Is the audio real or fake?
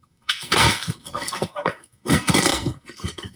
fake